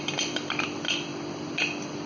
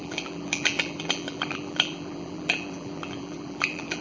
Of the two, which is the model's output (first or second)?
second